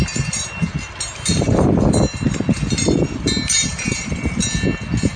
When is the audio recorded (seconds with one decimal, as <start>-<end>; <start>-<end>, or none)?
0.7-1.3; 4.4-5.2